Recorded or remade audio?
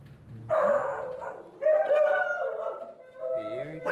recorded